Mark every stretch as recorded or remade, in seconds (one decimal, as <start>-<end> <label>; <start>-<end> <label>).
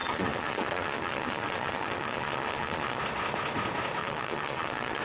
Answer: 0.0-3.0 remade; 3.0-4.0 recorded; 4.0-5.0 remade